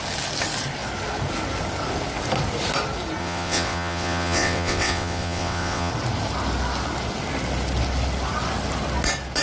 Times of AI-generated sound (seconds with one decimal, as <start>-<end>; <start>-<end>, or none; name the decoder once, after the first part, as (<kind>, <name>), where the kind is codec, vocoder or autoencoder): 3.2-5.9 (vocoder, WaveNeXt)